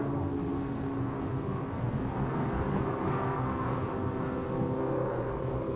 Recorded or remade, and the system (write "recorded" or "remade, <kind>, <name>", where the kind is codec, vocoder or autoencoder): remade, codec, SNAC